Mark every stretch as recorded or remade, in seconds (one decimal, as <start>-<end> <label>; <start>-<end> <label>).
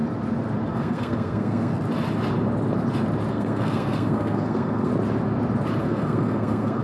0.0-0.7 recorded; 0.7-1.7 remade; 1.7-3.3 recorded; 3.3-4.9 remade; 4.9-5.8 recorded; 5.8-6.8 remade